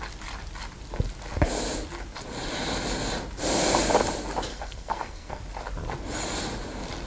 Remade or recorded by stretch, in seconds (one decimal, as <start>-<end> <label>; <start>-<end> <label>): 0.0-4.5 recorded; 4.5-5.4 remade; 5.4-7.1 recorded